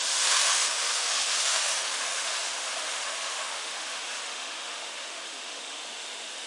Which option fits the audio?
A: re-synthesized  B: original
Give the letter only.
A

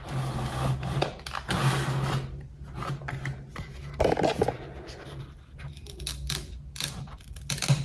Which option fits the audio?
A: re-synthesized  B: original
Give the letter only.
B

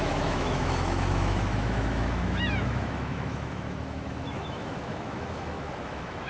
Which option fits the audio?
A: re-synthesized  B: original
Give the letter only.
A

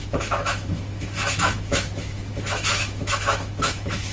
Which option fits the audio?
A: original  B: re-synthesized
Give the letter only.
B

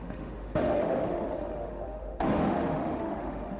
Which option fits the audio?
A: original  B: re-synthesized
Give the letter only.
B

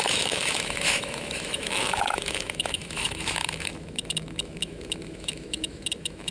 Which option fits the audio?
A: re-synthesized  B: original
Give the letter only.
A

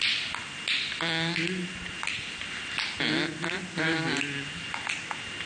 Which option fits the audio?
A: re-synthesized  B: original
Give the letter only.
B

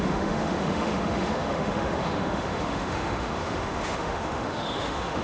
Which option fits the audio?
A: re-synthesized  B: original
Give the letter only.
A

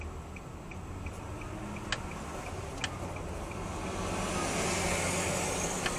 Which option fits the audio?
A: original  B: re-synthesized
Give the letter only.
A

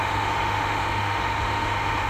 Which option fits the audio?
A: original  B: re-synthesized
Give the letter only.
B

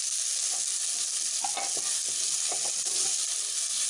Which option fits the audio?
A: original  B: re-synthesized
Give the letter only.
A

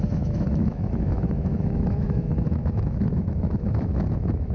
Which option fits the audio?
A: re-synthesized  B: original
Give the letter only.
A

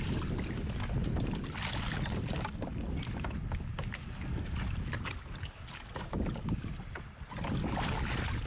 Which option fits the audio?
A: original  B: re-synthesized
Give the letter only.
A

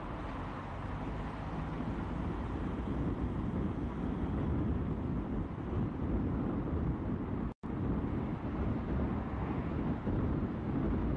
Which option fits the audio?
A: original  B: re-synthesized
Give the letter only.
A